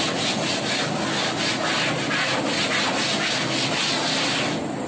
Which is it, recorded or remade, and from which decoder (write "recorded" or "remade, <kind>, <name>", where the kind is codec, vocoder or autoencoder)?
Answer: recorded